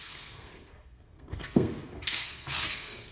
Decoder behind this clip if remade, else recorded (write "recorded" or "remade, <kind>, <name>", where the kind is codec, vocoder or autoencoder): remade, codec, SNAC